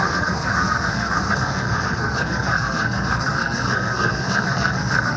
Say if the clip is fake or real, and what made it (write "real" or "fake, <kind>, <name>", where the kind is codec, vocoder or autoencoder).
fake, codec, SNAC